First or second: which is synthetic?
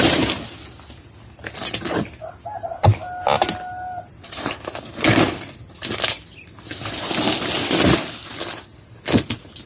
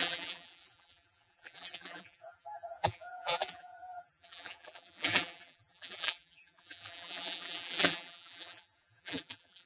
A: second